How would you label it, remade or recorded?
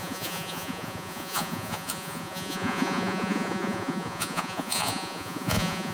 remade